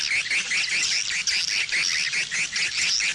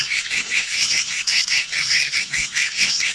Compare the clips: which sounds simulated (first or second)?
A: second